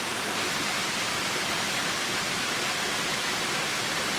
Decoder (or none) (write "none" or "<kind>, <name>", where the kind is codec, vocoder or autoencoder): none